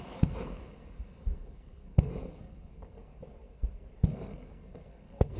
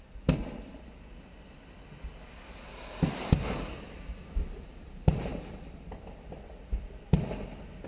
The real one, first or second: second